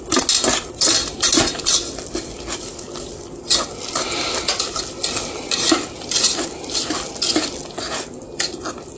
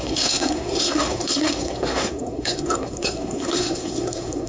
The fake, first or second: second